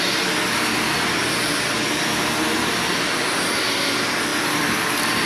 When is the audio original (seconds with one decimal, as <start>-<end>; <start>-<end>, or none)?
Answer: 0.0-5.2